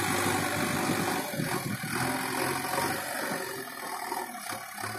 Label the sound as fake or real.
real